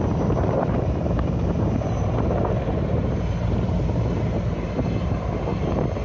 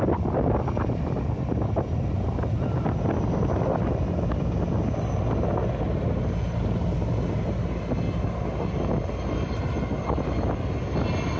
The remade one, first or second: first